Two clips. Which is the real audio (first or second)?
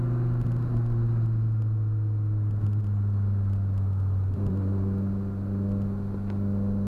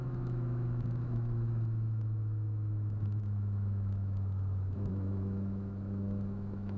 first